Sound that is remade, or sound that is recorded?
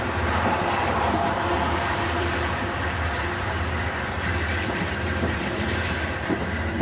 remade